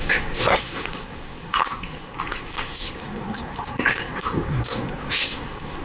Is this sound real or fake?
fake